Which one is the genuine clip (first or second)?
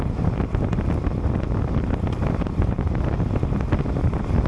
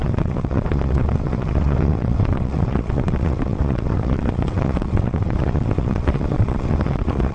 first